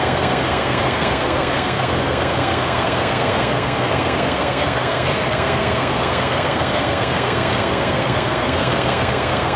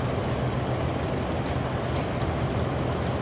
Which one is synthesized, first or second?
first